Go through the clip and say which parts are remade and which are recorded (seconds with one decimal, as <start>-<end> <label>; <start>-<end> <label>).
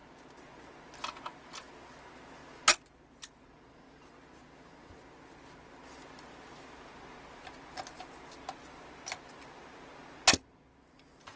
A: 0.0-11.4 recorded